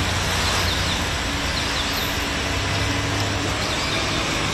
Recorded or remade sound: recorded